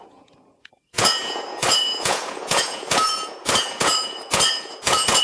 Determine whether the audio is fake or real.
fake